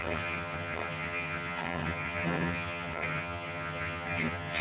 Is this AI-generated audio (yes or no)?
yes